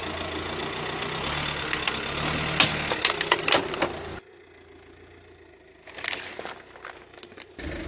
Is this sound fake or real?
real